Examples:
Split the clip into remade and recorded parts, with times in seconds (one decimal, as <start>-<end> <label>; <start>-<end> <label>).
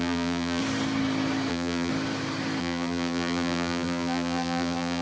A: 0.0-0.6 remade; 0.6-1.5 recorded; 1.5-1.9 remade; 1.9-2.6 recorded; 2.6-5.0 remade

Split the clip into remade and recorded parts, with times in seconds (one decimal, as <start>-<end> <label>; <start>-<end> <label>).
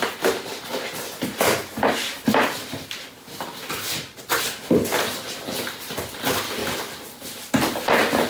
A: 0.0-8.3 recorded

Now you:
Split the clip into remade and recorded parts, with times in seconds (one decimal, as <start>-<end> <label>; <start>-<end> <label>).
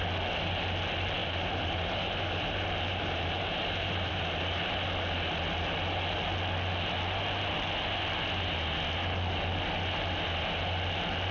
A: 0.0-1.2 recorded; 1.2-4.7 remade; 4.7-11.3 recorded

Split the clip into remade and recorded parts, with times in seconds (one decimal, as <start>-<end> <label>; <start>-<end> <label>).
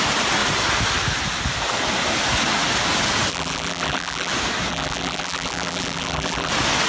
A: 0.0-3.3 recorded; 3.3-4.3 remade; 4.3-4.7 recorded; 4.7-6.5 remade; 6.5-6.9 recorded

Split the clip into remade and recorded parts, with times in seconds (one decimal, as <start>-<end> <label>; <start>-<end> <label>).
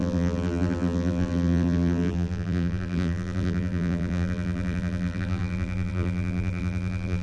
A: 0.0-7.2 remade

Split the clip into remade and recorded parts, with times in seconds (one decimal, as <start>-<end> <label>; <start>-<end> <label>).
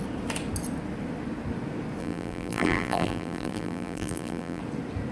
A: 0.0-2.0 recorded; 2.0-4.6 remade; 4.6-5.1 recorded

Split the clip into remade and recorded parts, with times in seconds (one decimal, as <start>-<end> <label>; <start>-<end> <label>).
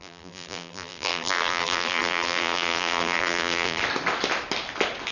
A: 0.0-3.8 remade; 3.8-5.1 recorded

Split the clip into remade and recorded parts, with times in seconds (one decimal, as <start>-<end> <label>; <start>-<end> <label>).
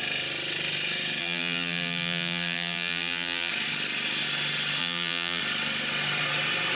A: 0.0-1.2 recorded; 1.2-3.5 remade; 3.5-4.8 recorded; 4.8-5.4 remade; 5.4-6.7 recorded